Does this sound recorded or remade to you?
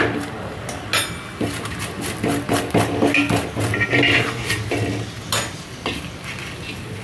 recorded